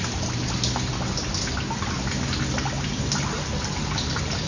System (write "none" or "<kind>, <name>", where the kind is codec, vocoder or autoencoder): none